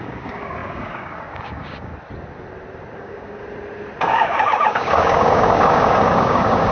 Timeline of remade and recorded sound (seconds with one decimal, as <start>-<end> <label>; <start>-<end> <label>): 0.0-1.9 remade; 1.9-3.0 recorded; 3.0-3.4 remade; 3.4-4.0 recorded; 4.0-6.7 remade